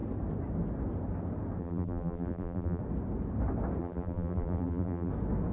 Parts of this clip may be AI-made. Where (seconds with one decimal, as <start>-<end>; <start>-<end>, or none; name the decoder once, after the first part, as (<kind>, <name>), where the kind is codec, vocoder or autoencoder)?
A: 1.6-2.8 (vocoder, BigVGAN v2); 3.8-5.1